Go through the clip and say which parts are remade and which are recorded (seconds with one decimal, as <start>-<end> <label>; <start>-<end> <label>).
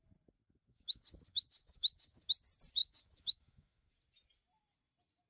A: 0.0-0.4 recorded; 0.4-2.3 remade; 2.3-2.8 recorded; 2.8-3.9 remade; 3.9-5.3 recorded